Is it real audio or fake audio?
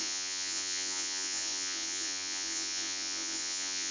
fake